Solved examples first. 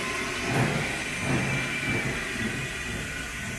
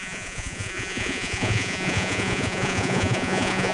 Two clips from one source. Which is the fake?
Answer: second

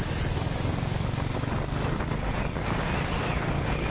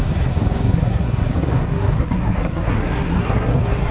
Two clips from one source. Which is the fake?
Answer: second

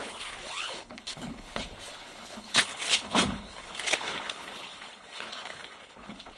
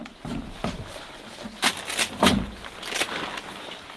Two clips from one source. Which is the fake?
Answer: first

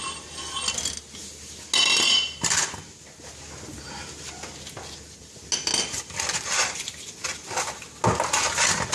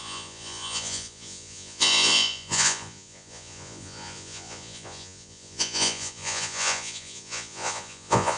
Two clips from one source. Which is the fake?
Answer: second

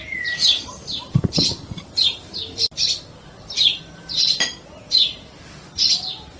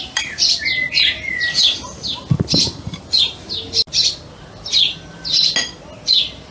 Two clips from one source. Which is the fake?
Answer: first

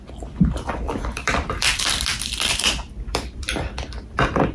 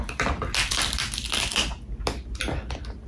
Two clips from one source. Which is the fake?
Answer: first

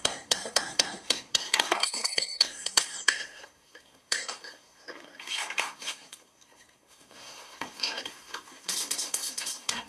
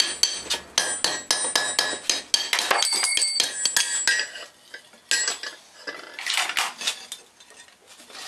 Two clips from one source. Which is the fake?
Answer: first